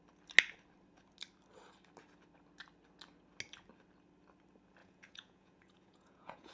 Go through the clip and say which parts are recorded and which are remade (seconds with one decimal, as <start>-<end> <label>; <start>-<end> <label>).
0.0-4.8 recorded; 4.8-6.5 remade